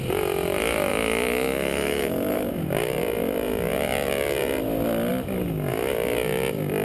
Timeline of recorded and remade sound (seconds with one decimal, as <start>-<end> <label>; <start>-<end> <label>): 0.0-0.9 recorded; 0.9-2.5 remade; 2.5-6.8 recorded